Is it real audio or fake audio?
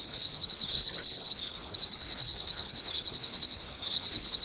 fake